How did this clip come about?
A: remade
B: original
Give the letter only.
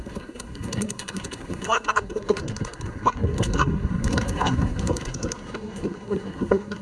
A